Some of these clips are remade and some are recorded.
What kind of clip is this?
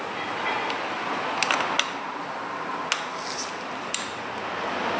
recorded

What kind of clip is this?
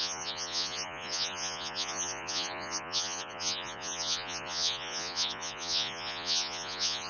remade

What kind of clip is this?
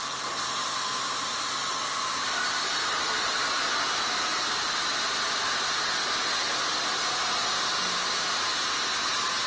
recorded